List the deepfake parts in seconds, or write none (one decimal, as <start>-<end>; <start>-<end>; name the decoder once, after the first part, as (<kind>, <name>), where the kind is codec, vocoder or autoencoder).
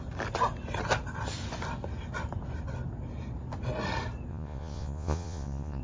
4.3-5.8 (vocoder, Vocos)